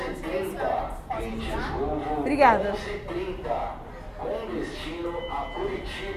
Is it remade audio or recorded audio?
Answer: recorded